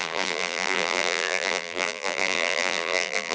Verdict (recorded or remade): remade